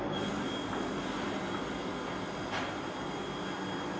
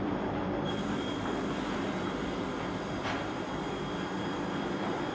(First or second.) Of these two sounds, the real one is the first